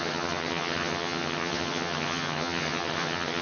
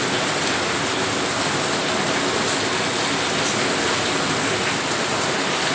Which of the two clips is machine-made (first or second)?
first